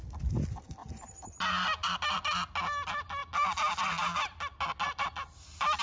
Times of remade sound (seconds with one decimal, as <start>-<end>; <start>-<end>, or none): none

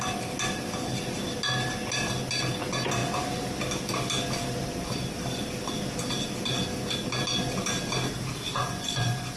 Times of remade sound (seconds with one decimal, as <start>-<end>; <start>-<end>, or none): 8.6-9.4

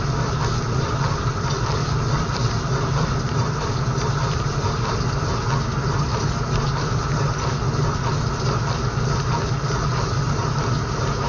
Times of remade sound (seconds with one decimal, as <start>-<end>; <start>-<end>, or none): 1.8-3.9

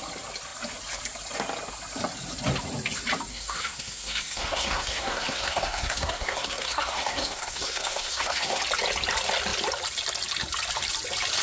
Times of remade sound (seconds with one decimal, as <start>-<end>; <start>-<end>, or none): 3.3-8.6

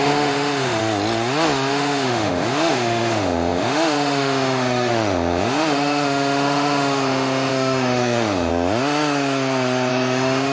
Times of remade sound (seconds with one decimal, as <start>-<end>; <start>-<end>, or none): 0.0-0.8; 1.7-8.5; 9.9-10.5

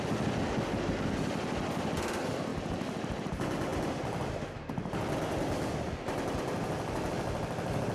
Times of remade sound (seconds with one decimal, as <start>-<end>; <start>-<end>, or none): none

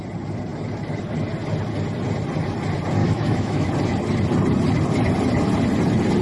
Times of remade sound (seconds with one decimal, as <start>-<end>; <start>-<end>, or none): 3.0-3.7